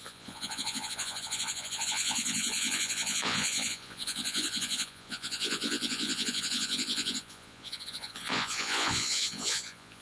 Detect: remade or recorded remade